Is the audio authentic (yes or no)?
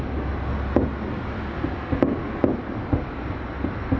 yes